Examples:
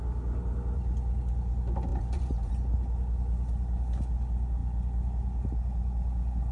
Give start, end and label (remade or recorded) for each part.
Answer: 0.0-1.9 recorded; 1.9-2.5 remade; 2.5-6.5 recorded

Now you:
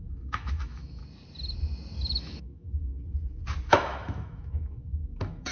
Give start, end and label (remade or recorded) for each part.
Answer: 0.0-1.0 remade; 1.0-2.2 recorded; 2.2-2.9 remade; 2.9-3.7 recorded; 3.7-5.5 remade

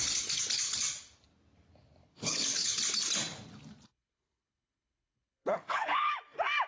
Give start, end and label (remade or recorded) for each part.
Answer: 0.0-2.0 recorded; 2.0-2.8 remade; 2.8-3.9 recorded; 3.9-6.1 remade; 6.1-6.7 recorded

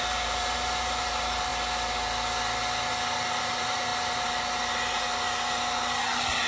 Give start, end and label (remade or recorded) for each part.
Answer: 0.0-1.5 remade; 1.5-3.4 recorded; 3.4-3.9 remade; 3.9-6.5 recorded

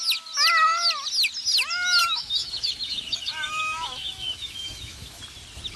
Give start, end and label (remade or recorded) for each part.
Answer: 0.0-2.0 recorded; 2.0-5.2 remade; 5.2-5.8 recorded

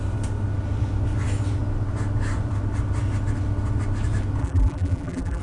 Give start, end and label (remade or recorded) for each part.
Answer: 0.0-4.4 recorded; 4.4-5.4 remade

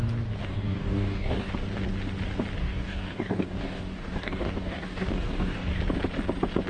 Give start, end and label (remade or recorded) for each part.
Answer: 0.0-0.4 recorded; 0.4-1.5 remade; 1.5-2.6 recorded; 2.6-5.8 remade; 5.8-6.7 recorded